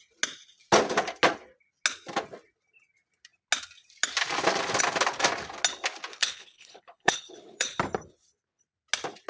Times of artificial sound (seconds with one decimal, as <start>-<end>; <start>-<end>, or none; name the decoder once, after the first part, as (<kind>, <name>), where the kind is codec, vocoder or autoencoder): 6.1-7.8 (codec, HILCodec)